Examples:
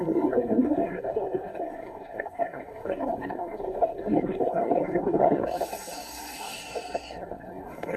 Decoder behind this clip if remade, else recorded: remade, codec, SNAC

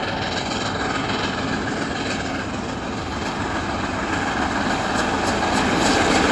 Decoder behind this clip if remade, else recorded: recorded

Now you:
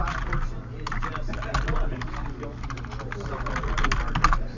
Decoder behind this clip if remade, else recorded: recorded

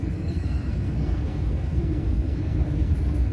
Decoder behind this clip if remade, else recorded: remade, codec, SNAC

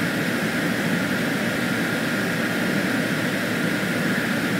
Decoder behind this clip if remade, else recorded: recorded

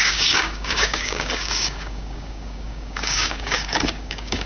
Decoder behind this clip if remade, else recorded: remade, codec, DAC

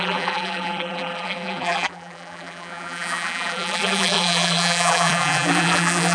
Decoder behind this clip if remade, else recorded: remade, vocoder, BigVGAN v2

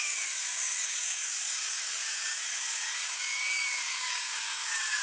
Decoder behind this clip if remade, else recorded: remade, codec, DAC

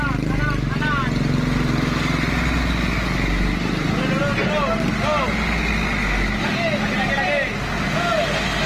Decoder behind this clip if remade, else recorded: recorded